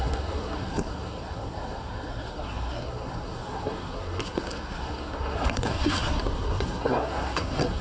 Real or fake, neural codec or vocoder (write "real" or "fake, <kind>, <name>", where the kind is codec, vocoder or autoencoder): fake, codec, SNAC